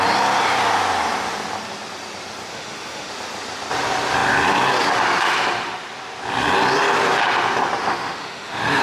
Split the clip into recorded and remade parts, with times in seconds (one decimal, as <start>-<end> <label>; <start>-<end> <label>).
0.0-2.5 recorded; 2.5-3.1 remade; 3.1-7.8 recorded; 7.8-8.8 remade